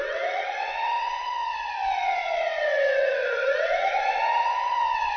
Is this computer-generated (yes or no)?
yes